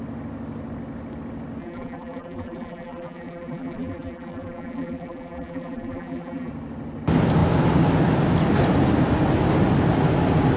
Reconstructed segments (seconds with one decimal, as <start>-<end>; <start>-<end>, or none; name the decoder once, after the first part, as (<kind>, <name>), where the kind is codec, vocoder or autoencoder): 1.6-6.5 (vocoder, BigVGAN v2)